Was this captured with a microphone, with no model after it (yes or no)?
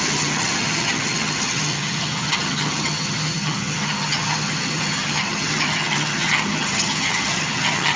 no